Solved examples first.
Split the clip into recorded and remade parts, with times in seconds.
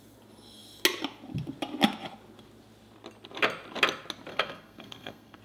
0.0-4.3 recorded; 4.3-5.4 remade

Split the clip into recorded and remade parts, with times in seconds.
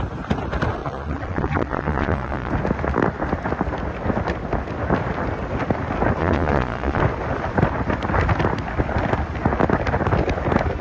0.0-0.8 recorded; 0.8-2.5 remade; 2.5-6.2 recorded; 6.2-7.0 remade; 7.0-10.8 recorded